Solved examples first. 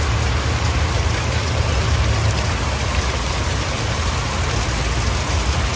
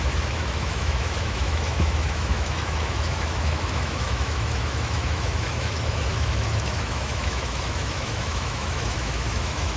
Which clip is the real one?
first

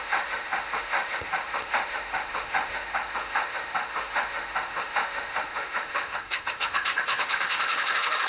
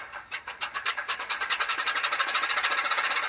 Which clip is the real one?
second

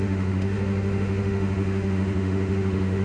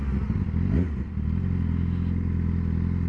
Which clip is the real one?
second